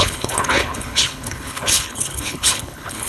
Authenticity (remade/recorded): remade